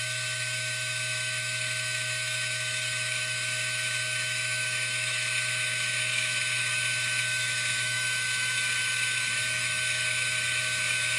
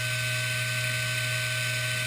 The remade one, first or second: first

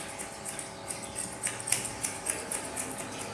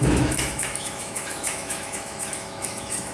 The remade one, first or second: second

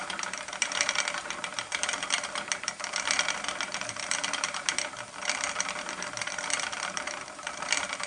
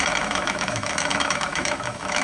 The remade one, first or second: second